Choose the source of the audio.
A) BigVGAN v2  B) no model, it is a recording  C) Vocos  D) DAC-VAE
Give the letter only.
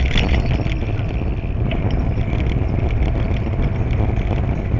B